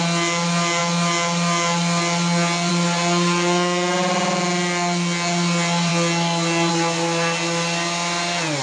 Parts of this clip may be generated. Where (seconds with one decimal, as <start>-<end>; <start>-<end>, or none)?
none